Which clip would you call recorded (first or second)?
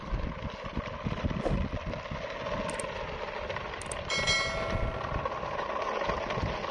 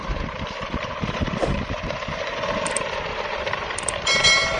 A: first